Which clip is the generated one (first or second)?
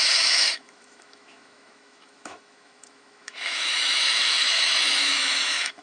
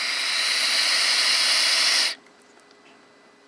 first